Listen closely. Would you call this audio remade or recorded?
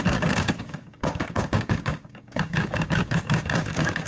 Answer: remade